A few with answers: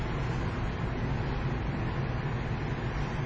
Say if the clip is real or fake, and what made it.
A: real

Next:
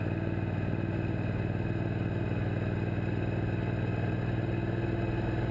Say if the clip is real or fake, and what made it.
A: real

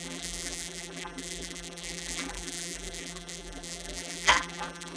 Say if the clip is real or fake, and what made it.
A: fake, vocoder, BigVGAN v2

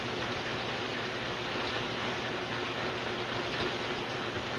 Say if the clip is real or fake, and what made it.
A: real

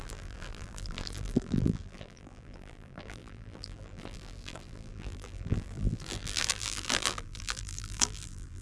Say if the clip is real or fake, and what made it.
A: fake, vocoder, BigVGAN v2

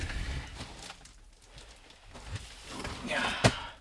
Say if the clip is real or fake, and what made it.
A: fake, vocoder, BigVGAN v2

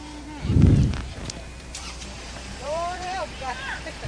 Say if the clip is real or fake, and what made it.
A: fake, vocoder, BigVGAN v2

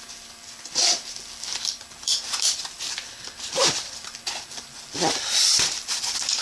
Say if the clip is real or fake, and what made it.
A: fake, vocoder, BigVGAN v2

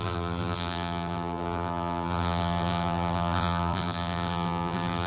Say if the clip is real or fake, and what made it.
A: fake, vocoder, BigVGAN v2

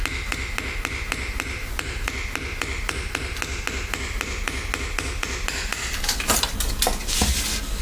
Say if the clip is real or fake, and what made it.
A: real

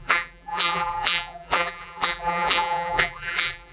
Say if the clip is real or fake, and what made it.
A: fake, vocoder, BigVGAN v2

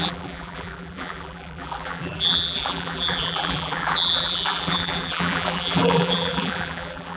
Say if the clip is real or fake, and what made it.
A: fake, vocoder, BigVGAN v2